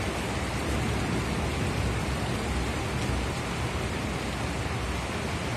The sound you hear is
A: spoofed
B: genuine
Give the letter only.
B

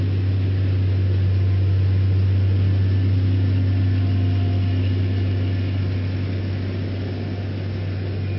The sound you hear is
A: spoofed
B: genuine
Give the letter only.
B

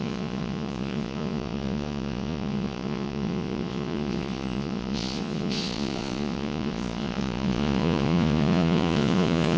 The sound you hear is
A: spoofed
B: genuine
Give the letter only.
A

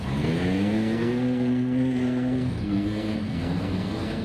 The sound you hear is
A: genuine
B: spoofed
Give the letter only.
B